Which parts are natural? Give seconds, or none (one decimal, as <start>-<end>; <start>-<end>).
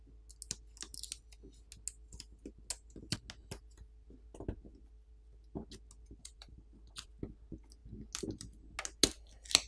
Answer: 0.0-6.2; 7.1-9.7